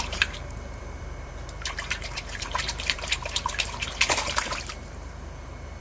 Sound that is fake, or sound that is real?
fake